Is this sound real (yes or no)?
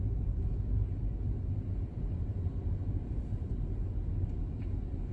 no